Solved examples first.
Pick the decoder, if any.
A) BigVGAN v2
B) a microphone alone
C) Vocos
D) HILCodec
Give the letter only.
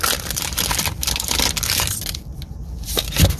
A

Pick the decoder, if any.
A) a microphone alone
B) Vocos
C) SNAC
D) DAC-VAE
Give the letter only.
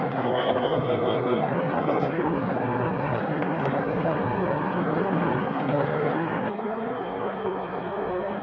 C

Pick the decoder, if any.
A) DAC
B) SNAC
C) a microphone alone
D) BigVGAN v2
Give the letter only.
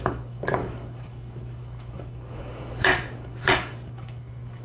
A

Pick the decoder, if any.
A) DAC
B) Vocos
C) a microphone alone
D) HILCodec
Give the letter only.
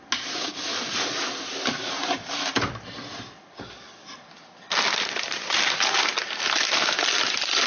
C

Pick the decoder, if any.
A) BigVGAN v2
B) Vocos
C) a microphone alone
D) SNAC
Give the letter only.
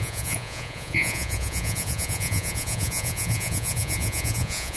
B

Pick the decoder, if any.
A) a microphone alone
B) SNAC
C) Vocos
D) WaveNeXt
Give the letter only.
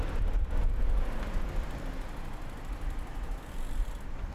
A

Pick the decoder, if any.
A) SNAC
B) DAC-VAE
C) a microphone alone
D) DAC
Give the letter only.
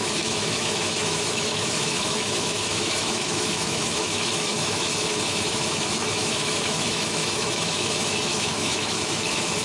B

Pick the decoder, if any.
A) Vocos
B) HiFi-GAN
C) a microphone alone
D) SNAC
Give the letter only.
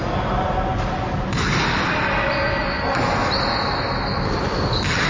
C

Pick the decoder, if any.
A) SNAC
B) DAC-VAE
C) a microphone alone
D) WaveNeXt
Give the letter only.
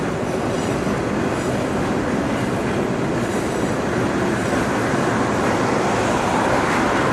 C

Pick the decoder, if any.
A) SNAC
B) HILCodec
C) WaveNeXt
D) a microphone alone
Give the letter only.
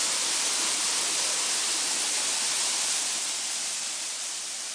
D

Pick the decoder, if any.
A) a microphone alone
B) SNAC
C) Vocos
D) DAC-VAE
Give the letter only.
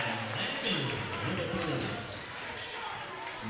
A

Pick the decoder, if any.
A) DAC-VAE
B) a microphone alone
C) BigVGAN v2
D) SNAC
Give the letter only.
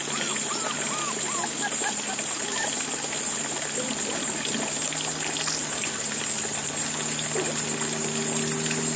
B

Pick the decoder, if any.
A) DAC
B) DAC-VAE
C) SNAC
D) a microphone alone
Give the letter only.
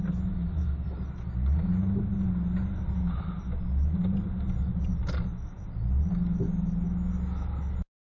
D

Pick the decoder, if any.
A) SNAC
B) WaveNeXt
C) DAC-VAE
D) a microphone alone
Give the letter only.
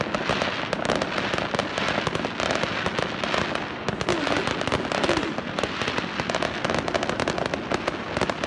D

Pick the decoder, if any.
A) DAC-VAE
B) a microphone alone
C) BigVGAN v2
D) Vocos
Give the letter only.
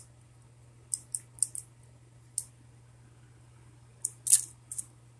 B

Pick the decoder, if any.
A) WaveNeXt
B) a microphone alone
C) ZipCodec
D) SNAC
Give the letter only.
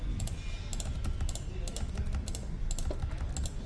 B